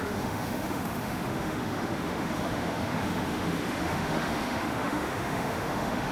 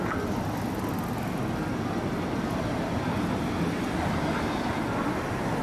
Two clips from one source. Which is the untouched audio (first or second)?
second